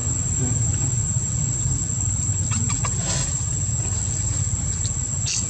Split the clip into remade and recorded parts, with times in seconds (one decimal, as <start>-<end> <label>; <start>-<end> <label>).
0.0-5.5 recorded